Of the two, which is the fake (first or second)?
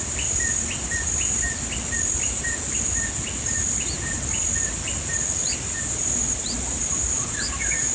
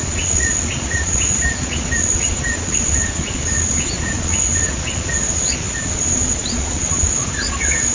second